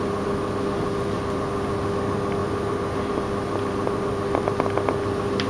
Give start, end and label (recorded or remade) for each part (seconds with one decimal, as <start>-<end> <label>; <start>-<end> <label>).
0.0-5.5 recorded